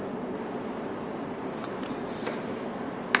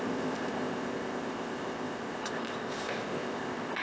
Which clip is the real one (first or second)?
first